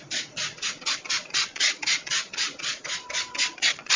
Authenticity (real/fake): fake